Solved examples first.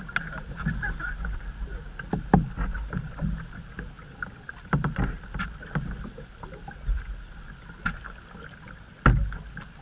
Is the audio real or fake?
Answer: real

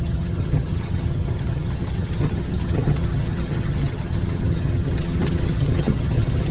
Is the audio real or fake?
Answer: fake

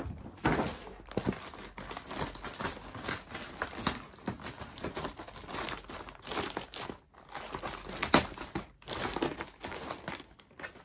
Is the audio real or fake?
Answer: real